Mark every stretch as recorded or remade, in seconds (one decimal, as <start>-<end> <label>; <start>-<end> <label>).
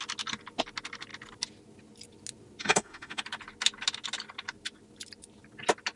0.0-2.6 recorded; 2.6-3.2 remade; 3.2-6.0 recorded